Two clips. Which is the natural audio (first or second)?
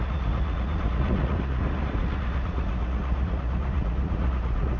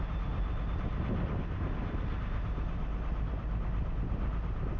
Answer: second